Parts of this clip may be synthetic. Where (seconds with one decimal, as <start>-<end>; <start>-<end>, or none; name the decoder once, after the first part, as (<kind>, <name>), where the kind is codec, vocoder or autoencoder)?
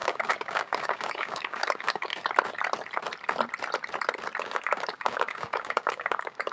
0.0-2.1 (codec, DAC); 4.4-6.5